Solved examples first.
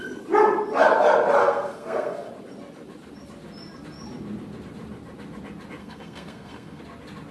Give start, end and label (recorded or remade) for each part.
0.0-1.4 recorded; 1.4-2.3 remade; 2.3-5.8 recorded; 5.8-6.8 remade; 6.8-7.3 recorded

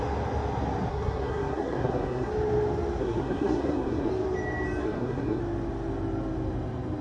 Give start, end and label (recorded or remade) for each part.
0.0-0.9 recorded; 0.9-2.3 remade; 2.3-3.0 recorded; 3.0-4.1 remade; 4.1-4.8 recorded; 4.8-5.4 remade; 5.4-7.0 recorded

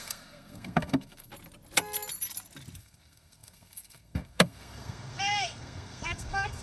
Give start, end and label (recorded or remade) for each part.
0.0-1.3 remade; 1.3-2.8 recorded; 2.8-6.6 remade

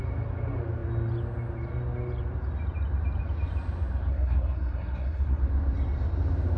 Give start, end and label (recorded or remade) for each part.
0.0-4.1 recorded; 4.1-5.4 remade; 5.4-6.6 recorded